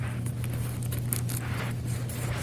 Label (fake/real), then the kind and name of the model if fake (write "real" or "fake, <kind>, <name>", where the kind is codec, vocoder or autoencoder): real